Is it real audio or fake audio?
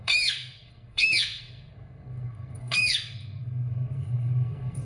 fake